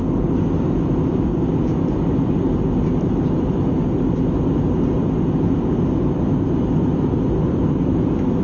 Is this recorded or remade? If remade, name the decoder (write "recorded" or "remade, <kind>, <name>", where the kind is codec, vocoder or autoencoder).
recorded